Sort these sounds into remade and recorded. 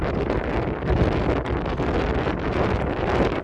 recorded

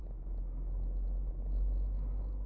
recorded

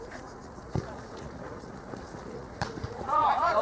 remade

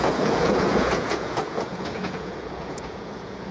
remade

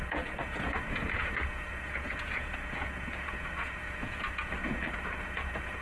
remade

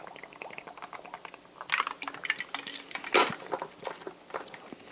recorded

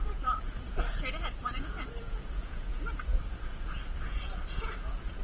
remade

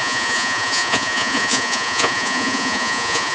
remade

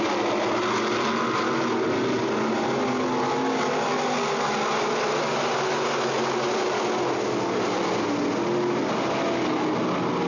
recorded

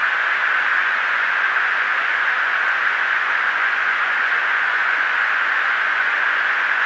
remade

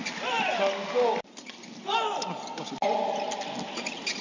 recorded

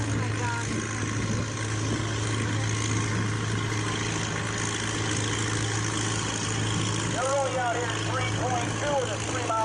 recorded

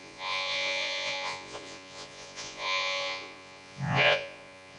remade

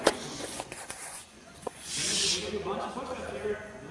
remade